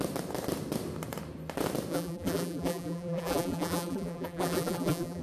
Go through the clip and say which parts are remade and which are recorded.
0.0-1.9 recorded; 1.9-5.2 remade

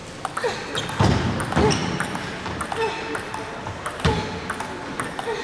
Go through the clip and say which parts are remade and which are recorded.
0.0-1.8 recorded; 1.8-2.7 remade; 2.7-3.6 recorded; 3.6-4.2 remade; 4.2-5.4 recorded